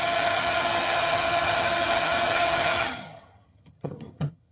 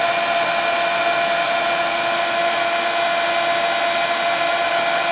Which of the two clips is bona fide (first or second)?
second